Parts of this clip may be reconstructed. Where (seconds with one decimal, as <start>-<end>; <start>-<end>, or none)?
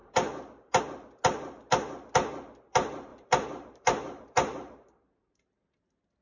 3.1-5.7